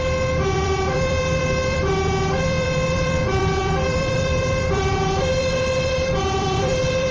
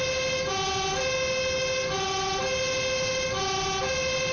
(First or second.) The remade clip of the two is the first